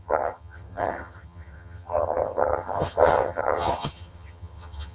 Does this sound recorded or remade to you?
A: remade